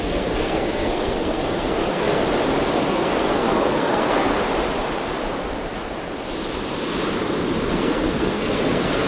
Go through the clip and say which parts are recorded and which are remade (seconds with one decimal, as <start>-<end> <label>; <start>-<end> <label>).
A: 0.0-2.2 remade; 2.2-2.9 recorded; 2.9-4.3 remade; 4.3-7.7 recorded; 7.7-9.1 remade